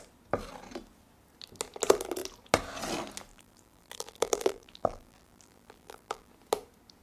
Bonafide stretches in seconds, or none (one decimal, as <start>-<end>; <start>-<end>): 0.0-3.3; 6.3-7.0

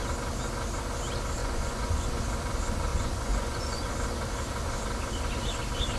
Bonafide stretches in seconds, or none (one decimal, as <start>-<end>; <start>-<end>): 0.0-1.4; 2.2-2.9; 3.9-6.0

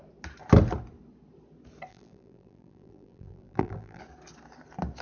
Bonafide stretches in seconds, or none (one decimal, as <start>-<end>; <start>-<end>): 0.0-1.9; 4.0-5.0

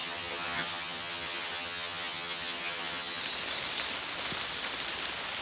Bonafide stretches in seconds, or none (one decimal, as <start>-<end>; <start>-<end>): 3.2-5.4

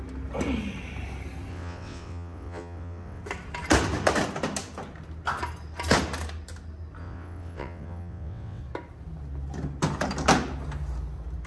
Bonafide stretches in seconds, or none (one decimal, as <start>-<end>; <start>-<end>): 0.0-1.5; 3.2-7.0; 8.6-11.5